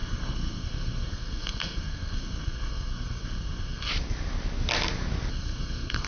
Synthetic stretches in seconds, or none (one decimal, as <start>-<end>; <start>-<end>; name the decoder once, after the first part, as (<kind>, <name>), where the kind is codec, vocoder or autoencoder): 0.0-3.9 (codec, SNAC); 5.3-6.1